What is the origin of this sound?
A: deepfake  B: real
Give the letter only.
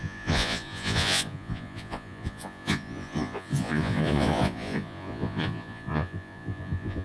A